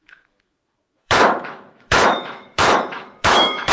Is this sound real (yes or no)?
no